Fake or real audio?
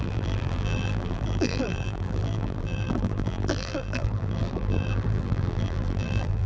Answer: fake